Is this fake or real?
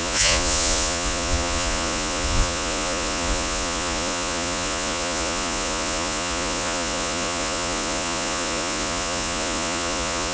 fake